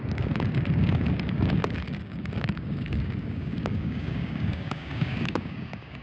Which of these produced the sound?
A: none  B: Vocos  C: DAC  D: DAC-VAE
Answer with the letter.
C